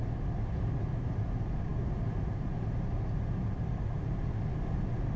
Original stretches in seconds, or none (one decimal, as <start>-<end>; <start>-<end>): 0.0-5.2